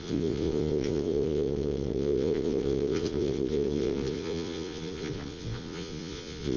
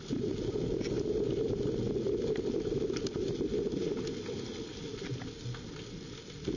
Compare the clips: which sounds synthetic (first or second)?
first